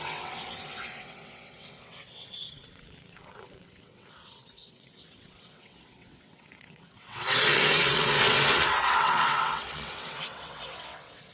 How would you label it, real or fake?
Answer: fake